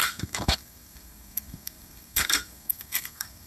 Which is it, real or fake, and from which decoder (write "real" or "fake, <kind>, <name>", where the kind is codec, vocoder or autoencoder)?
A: fake, codec, SNAC